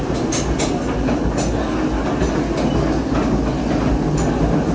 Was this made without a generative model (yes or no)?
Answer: yes